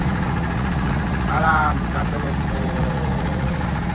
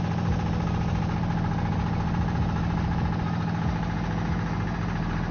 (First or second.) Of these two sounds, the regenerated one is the first